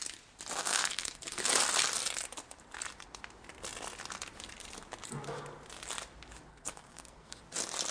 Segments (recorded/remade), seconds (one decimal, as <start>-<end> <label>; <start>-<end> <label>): 0.0-0.6 recorded; 0.6-1.5 remade; 1.5-6.5 recorded; 6.5-7.4 remade; 7.4-7.9 recorded